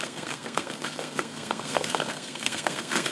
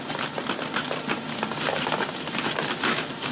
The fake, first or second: first